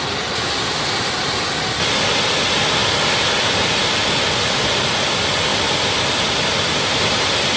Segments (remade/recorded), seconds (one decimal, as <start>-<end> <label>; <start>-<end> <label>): 0.0-2.8 recorded; 2.8-3.7 remade; 3.7-5.5 recorded; 5.5-6.9 remade; 6.9-7.6 recorded